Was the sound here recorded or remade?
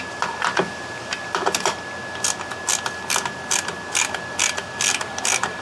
recorded